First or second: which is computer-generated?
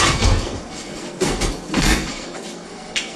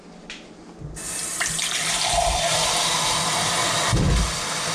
first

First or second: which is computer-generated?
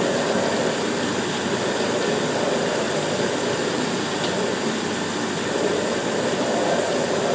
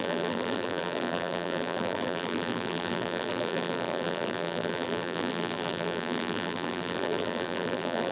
second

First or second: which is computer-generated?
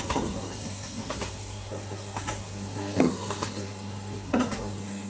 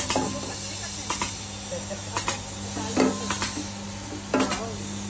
first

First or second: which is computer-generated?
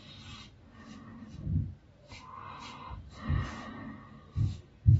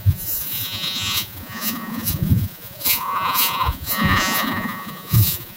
second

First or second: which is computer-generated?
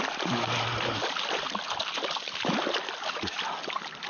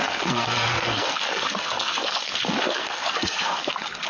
second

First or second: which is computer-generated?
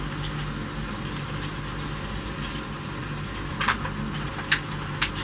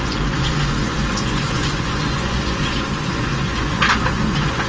second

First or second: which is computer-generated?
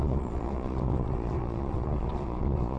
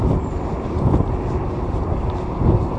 first